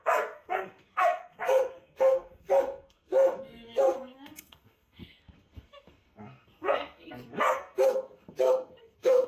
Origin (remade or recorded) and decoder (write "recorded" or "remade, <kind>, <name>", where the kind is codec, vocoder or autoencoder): remade, codec, SNAC